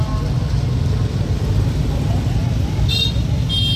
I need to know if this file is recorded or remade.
recorded